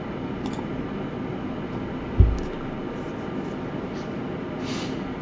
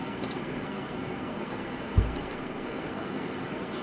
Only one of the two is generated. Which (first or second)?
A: second